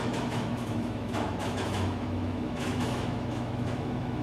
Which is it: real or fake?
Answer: fake